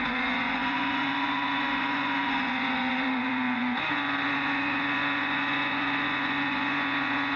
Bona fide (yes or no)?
no